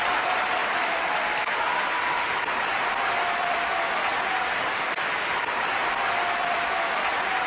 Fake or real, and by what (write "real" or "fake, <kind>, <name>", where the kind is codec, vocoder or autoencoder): real